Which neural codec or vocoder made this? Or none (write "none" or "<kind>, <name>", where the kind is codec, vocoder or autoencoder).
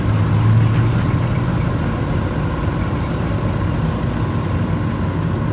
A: none